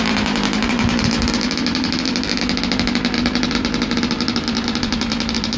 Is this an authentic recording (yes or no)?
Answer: yes